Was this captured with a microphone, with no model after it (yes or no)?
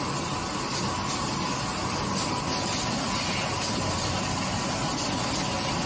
yes